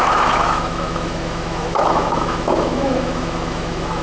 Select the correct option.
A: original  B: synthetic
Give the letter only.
B